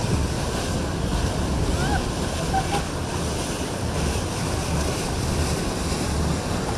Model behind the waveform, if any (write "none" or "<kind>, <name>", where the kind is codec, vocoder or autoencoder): none